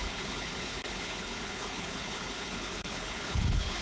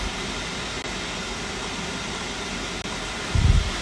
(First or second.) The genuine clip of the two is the second